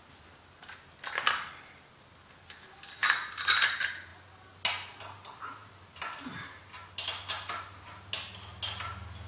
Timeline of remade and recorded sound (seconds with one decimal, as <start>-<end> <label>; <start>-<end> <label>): 0.0-9.3 recorded